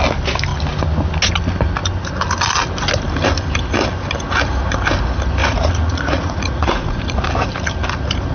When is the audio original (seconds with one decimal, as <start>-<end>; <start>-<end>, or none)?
0.0-5.4; 7.3-8.3